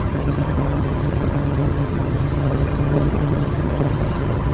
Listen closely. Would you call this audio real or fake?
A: fake